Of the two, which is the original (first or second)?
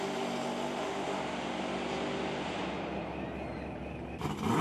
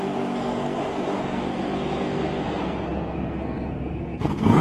first